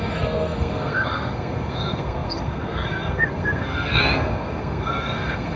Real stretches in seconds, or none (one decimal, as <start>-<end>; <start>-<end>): none